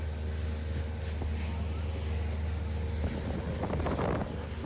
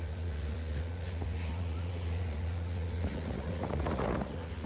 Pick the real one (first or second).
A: first